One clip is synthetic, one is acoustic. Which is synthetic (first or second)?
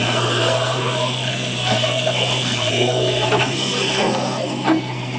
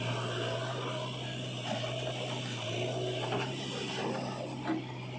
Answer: first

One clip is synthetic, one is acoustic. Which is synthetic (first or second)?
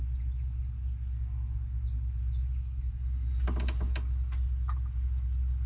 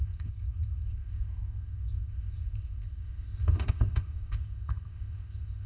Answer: second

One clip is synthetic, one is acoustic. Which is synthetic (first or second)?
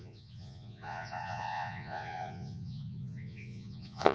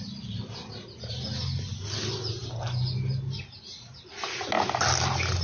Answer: first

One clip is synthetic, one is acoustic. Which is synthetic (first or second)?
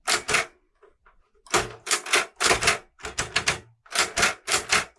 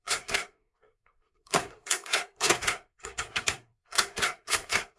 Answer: second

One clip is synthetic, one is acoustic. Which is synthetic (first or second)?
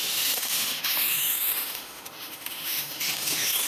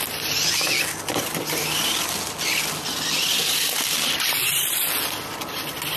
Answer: first